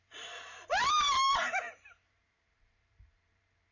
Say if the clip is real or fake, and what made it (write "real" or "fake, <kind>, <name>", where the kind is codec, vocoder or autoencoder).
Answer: fake, vocoder, BigVGAN v2